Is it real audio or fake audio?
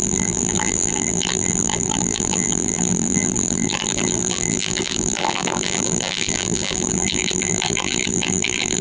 fake